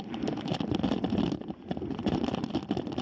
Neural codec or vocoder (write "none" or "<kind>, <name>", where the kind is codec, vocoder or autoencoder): none